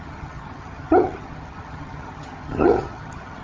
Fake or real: fake